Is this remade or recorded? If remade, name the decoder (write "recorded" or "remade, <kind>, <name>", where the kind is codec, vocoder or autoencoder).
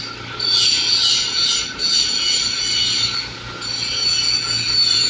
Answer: recorded